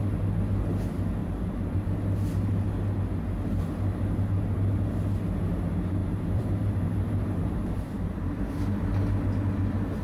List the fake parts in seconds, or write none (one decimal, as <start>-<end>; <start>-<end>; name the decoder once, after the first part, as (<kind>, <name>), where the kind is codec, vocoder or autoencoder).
1.2-1.8 (vocoder, BigVGAN v2); 6.0-8.6